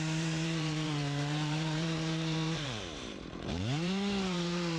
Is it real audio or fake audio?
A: fake